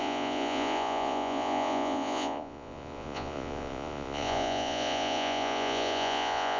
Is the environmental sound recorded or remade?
remade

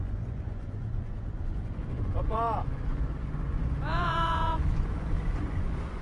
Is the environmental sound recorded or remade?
remade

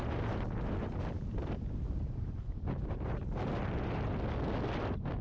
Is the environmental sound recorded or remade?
recorded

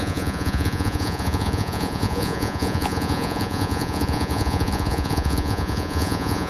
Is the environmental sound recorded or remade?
remade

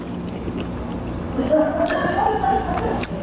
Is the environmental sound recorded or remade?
recorded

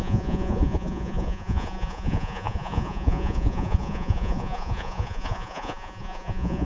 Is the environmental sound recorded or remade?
remade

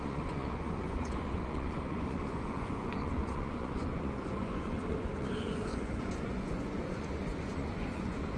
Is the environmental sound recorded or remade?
remade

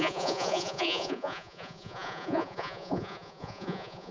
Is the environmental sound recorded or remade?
remade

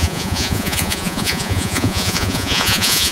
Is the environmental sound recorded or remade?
remade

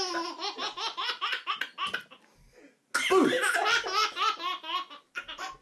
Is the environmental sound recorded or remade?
recorded